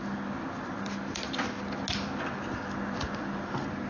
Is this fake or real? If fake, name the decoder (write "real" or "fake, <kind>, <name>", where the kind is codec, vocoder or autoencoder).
real